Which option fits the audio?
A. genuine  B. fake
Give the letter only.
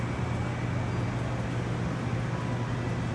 A